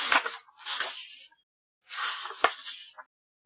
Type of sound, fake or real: real